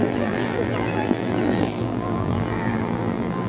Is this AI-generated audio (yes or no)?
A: yes